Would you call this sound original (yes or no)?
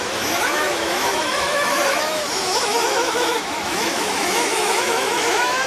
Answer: no